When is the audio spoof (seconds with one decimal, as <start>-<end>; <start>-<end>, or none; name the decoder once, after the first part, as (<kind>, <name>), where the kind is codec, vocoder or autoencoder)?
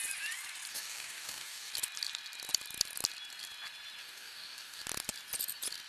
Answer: 0.7-1.7 (codec, DAC); 4.0-4.8